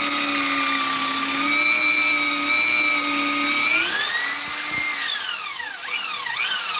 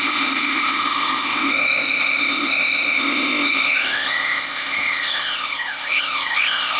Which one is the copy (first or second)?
second